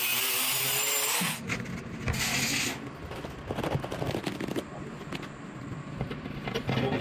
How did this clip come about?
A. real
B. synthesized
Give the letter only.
A